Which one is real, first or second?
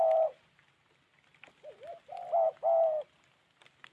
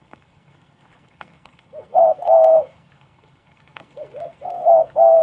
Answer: first